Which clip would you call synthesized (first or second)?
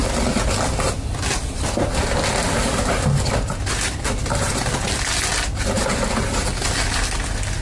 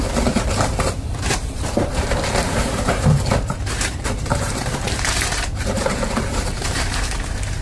second